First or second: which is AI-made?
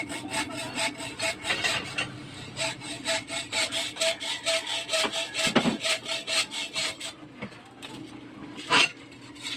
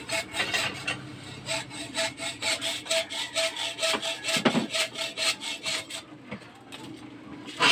first